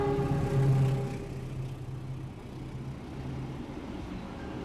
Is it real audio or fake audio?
real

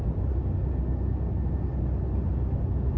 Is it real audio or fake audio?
real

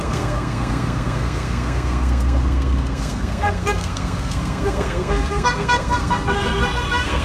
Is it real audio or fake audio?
fake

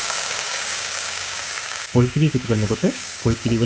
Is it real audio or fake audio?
fake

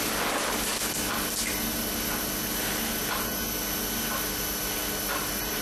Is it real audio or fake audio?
real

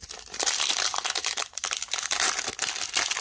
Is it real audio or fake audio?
real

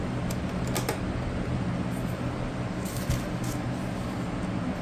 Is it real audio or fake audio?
real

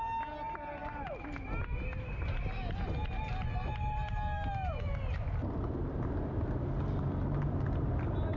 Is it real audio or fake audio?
real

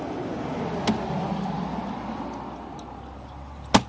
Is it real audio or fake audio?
real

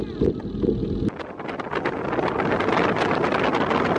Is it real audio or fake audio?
real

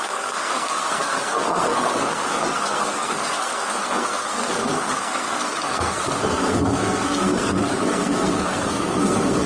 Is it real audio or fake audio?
fake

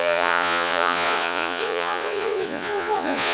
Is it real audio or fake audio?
fake